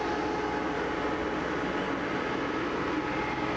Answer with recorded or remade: recorded